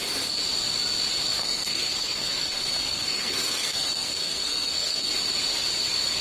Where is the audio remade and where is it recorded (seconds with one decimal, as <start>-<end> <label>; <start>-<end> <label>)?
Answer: 0.0-1.4 recorded; 1.4-5.1 remade; 5.1-6.2 recorded